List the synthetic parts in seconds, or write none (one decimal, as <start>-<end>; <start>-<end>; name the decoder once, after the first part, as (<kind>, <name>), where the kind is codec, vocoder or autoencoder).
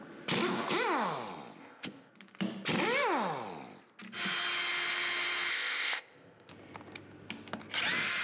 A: 1.6-2.1 (codec, ZipCodec); 5.5-6.5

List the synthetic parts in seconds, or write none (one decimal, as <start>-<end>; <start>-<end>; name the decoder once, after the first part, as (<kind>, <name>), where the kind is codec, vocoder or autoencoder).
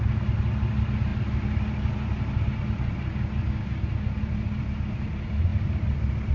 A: none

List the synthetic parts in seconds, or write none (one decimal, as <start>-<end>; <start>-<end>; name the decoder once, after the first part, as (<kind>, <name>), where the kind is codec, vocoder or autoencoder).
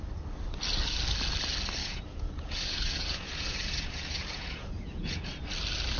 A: 1.8-5.4 (vocoder, Vocos)